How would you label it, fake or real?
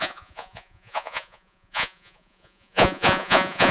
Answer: fake